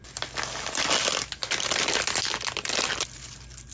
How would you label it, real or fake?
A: real